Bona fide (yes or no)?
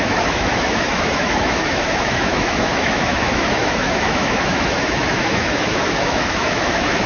no